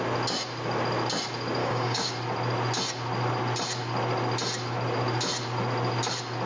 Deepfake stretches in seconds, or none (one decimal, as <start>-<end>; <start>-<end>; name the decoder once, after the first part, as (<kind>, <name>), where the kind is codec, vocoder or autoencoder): 1.6-2.1 (codec, DAC)